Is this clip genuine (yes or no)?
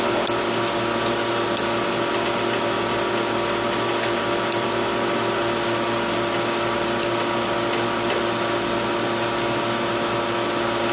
yes